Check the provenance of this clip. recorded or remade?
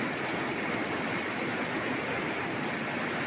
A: recorded